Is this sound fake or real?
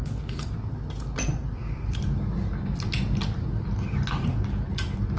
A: real